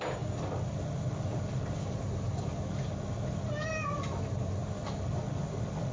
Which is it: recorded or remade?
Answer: recorded